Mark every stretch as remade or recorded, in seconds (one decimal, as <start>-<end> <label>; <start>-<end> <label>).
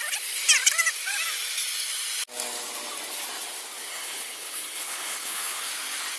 0.0-3.9 recorded; 3.9-5.7 remade; 5.7-6.2 recorded